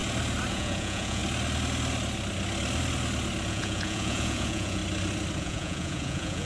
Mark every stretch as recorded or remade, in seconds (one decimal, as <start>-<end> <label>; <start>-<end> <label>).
0.0-0.5 recorded; 0.5-1.2 remade; 1.2-3.5 recorded; 3.5-4.8 remade; 4.8-5.4 recorded; 5.4-6.5 remade